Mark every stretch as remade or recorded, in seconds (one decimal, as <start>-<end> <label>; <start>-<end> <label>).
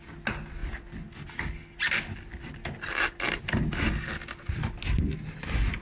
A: 0.0-5.8 recorded